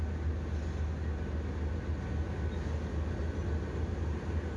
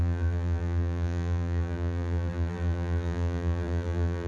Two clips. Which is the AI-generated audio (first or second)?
second